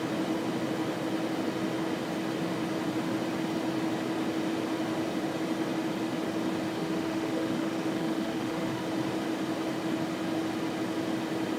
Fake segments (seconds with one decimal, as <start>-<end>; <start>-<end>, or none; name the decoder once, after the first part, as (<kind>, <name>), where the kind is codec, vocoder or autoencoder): 6.8-8.8 (autoencoder, DAC-VAE)